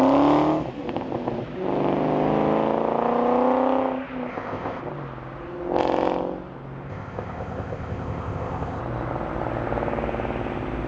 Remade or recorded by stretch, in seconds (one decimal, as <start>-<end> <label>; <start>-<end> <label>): 0.0-4.3 recorded; 4.3-4.8 remade; 4.8-6.9 recorded; 6.9-8.8 remade; 8.8-10.9 recorded